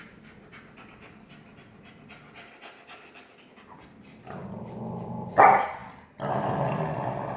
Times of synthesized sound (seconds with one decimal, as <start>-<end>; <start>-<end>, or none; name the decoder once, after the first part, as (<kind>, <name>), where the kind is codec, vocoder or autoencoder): 4.4-5.3 (vocoder, BigVGAN v2)